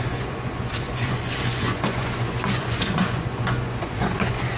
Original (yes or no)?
no